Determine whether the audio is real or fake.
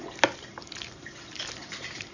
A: real